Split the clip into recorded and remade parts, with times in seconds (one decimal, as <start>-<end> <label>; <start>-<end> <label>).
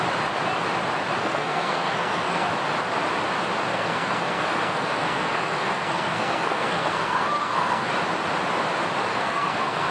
0.0-1.2 recorded; 1.2-2.5 remade; 2.5-3.7 recorded; 3.7-7.9 remade; 7.9-9.1 recorded; 9.1-9.9 remade